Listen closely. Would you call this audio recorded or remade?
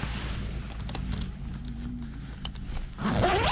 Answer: recorded